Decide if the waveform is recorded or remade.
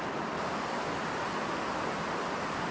recorded